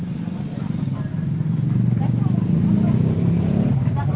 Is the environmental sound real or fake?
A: fake